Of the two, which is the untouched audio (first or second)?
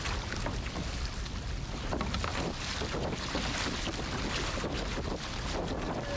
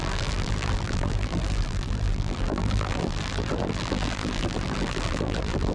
first